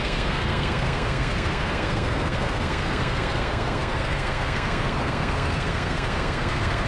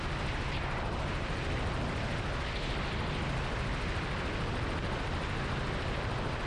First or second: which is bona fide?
second